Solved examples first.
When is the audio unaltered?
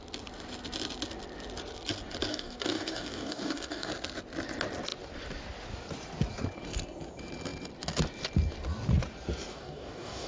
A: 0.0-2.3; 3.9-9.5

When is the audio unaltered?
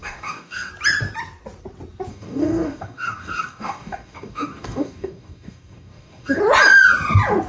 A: 0.7-2.1; 6.4-7.5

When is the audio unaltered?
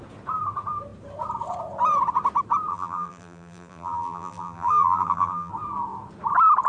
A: 0.0-2.7; 5.5-6.7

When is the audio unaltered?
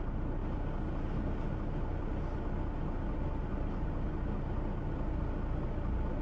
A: 0.0-6.2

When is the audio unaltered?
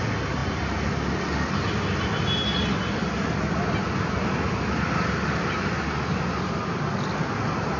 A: 0.0-7.8